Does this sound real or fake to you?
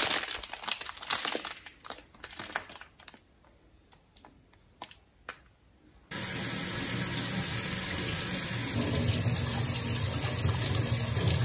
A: real